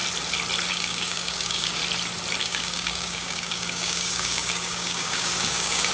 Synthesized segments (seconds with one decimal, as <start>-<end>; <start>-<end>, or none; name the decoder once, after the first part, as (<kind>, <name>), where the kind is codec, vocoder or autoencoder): 0.7-1.8 (codec, DAC); 2.4-5.9